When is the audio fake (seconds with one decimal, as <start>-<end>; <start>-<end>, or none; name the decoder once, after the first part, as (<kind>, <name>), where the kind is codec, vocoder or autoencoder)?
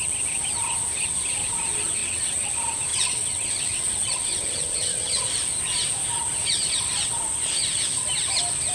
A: 2.0-2.5 (vocoder, WaveNeXt); 2.9-5.2